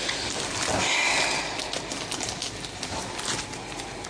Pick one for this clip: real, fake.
real